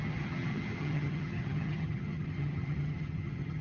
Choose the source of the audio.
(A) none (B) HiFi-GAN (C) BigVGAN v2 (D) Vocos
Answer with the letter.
B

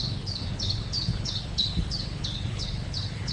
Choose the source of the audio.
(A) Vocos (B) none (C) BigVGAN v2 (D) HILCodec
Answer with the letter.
D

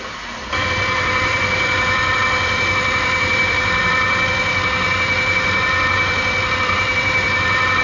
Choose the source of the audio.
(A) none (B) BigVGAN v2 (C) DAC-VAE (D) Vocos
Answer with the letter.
B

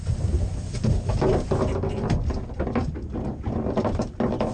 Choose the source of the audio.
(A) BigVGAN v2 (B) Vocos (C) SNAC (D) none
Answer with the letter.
D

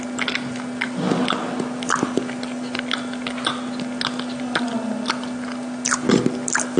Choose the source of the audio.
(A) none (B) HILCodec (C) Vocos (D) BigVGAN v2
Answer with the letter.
A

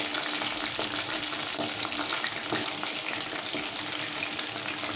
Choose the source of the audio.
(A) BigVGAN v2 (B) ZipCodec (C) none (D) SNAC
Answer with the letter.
C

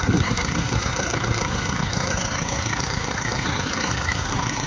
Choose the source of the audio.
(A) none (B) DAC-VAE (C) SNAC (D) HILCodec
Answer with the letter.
C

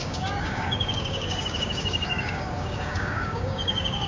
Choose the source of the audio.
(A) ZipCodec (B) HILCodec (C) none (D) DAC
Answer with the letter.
D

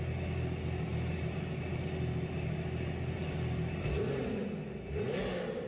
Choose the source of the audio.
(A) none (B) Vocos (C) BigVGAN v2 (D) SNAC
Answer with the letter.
A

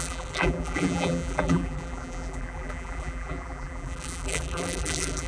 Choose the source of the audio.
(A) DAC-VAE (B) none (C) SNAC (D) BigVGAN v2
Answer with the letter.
D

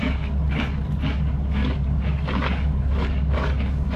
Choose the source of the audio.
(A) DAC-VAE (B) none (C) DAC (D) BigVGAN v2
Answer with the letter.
C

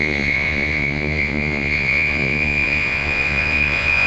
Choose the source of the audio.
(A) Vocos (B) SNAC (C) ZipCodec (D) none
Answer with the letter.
A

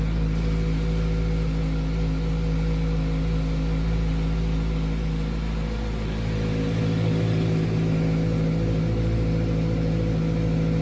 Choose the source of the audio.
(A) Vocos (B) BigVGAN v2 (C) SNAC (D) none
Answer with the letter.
D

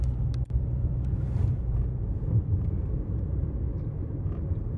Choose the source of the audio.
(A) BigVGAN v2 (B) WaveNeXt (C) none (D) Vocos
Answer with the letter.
A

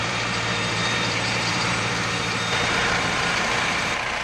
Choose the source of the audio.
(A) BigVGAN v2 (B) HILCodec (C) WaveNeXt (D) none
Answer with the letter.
A